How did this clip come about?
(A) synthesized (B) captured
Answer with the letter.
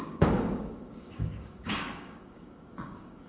A